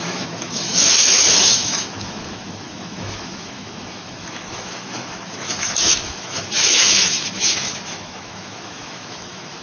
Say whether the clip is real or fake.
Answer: fake